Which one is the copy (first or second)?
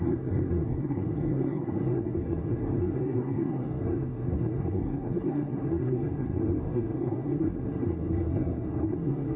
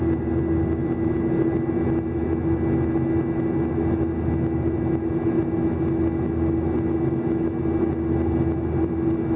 first